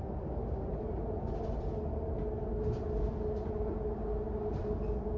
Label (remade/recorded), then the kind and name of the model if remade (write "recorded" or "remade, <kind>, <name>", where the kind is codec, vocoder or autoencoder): recorded